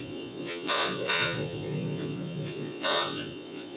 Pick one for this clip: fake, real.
fake